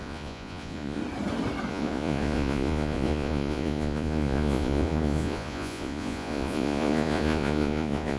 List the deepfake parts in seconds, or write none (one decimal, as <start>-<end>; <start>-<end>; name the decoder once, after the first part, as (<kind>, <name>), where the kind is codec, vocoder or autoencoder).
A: 0.0-1.0 (vocoder, Vocos); 1.7-8.2